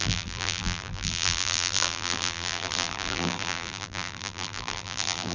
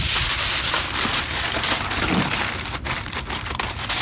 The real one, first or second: second